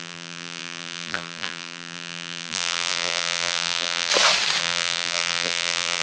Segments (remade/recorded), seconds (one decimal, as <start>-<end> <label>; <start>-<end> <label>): 0.0-4.1 remade; 4.1-4.6 recorded; 4.6-6.0 remade